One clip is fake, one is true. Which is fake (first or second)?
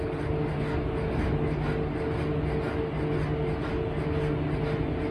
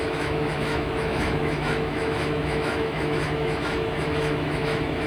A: second